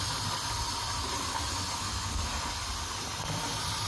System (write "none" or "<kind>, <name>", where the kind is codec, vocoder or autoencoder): none